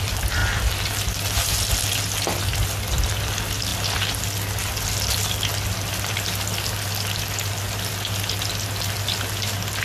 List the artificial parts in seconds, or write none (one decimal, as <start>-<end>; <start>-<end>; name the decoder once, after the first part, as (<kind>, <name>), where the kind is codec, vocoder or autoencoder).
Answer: none

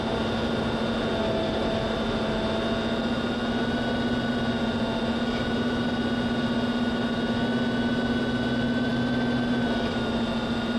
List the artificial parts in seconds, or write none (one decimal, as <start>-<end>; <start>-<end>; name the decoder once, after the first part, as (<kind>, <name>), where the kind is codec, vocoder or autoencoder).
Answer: none

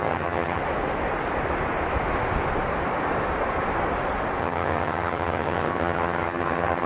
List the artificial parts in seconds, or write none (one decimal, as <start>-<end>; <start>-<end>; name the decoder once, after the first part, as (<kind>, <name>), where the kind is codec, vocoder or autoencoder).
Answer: 0.0-0.6 (vocoder, HiFi-GAN); 4.4-6.9

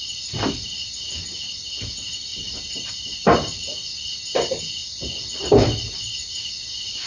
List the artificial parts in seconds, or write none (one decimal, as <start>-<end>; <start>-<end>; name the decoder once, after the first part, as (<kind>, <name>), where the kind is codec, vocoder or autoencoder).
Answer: 2.3-2.9 (vocoder, BigVGAN v2); 4.8-5.9

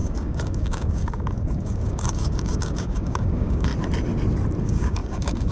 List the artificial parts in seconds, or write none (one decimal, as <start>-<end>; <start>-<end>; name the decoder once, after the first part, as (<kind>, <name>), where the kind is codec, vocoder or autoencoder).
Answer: 0.0-3.7 (codec, DAC); 4.6-5.5

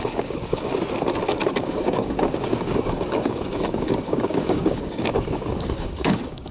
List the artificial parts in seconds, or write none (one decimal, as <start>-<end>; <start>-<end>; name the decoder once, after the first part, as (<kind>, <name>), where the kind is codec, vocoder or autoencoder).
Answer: 0.0-0.7 (codec, DAC); 1.6-6.5

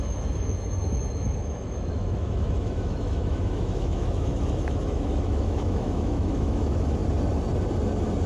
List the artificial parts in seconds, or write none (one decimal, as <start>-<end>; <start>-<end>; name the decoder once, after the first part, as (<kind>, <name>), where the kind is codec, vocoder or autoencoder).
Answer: 0.0-7.0 (autoencoder, DAC-VAE)

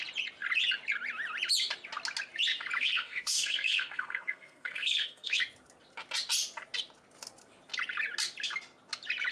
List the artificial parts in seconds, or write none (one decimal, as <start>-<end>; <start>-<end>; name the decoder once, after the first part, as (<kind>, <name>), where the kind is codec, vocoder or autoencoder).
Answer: 2.8-5.4 (codec, SNAC)